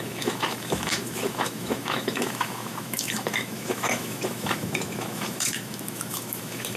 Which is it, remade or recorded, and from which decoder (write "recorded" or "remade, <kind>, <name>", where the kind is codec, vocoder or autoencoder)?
remade, autoencoder, DAC-VAE